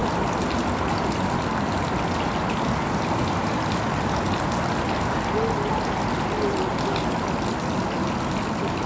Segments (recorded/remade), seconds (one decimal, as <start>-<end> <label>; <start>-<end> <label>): 0.0-8.9 recorded